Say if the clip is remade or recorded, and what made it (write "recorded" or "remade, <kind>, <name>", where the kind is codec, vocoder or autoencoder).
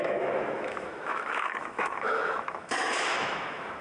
remade, autoencoder, DAC-VAE